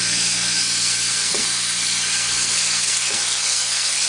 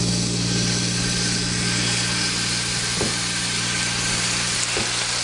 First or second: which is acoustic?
second